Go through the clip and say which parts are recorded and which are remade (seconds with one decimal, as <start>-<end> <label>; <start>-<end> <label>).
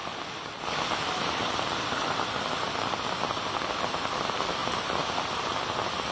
0.0-6.1 recorded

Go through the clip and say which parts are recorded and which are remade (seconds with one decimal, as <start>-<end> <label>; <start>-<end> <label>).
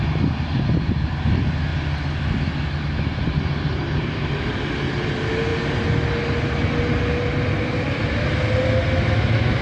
0.0-9.6 recorded